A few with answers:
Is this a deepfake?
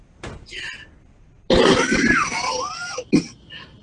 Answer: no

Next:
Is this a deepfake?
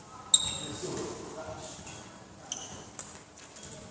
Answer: no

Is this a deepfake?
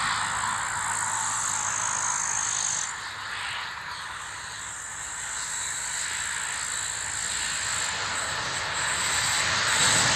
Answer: no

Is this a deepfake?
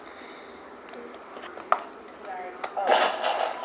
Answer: no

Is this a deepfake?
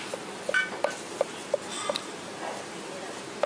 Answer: no